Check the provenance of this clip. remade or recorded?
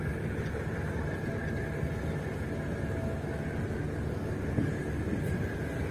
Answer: recorded